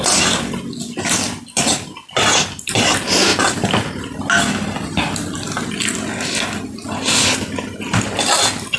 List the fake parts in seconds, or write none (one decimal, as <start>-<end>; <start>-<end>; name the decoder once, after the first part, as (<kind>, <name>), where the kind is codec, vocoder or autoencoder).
none